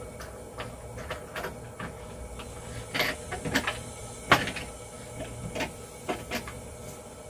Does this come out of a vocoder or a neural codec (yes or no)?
no